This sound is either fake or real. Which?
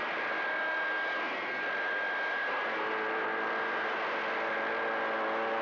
real